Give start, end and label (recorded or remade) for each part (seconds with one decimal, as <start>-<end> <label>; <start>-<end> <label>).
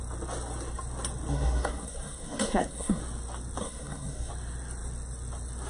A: 0.0-1.3 recorded; 1.3-3.0 remade; 3.0-3.6 recorded; 3.6-4.3 remade; 4.3-5.7 recorded